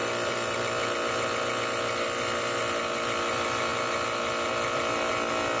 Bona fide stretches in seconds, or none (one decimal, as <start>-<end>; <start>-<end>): 0.0-5.6